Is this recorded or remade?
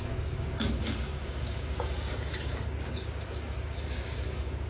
remade